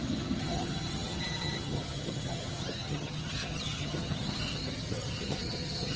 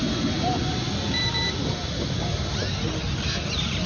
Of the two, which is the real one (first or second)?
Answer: second